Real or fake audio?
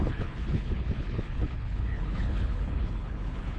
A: fake